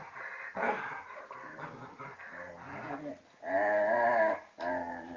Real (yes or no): yes